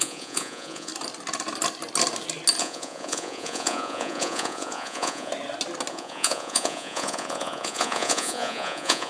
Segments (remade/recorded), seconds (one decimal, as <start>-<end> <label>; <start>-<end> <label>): 0.0-0.9 remade; 0.9-2.6 recorded; 2.6-5.3 remade; 5.3-5.9 recorded; 5.9-9.1 remade